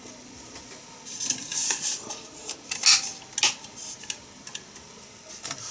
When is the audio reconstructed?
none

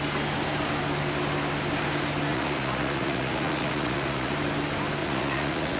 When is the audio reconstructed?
2.3-4.3; 5.0-5.8

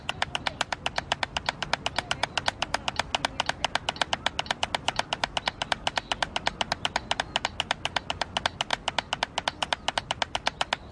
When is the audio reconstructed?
none

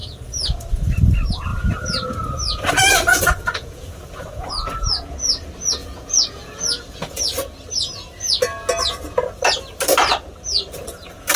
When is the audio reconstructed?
3.1-4.5; 5.8-7.2

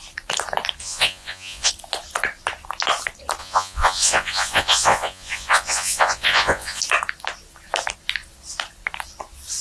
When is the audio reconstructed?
0.8-1.7; 3.4-6.8

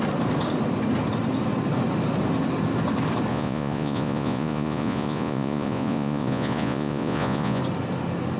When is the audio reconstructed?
3.3-7.6

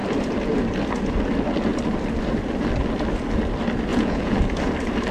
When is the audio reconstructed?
3.9-4.4